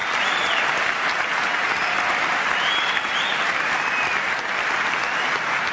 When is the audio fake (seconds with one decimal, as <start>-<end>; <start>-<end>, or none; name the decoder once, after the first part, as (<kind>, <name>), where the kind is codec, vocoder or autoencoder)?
none